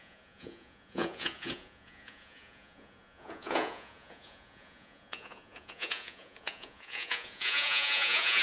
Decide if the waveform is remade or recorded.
remade